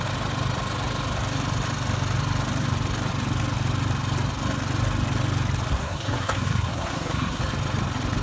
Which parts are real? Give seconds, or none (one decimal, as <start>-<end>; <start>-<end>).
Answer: 0.0-5.8; 7.4-8.2